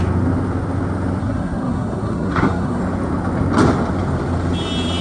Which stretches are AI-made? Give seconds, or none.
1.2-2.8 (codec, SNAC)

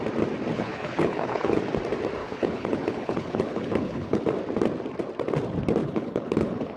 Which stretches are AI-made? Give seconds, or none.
0.5-1.6 (codec, HILCodec); 2.2-4.2; 5.8-6.8

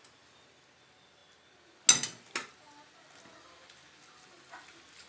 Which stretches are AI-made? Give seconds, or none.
none

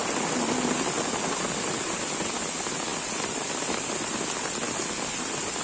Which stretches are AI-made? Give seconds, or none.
none

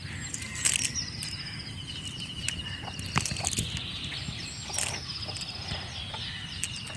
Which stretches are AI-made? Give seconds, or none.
none

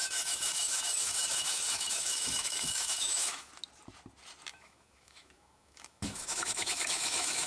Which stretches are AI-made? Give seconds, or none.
0.0-3.5 (autoencoder, DAC-VAE); 4.5-7.5